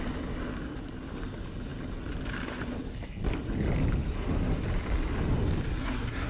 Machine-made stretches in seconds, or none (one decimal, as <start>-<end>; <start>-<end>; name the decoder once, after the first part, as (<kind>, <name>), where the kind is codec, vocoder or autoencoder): 5.8-6.3 (codec, SNAC)